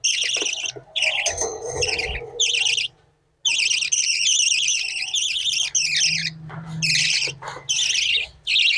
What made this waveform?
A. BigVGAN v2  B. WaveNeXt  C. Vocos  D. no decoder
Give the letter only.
D